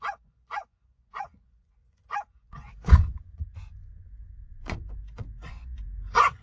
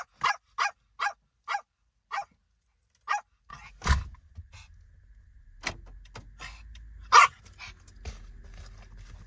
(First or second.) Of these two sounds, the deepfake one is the first